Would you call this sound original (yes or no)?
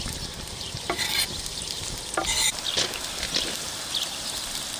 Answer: yes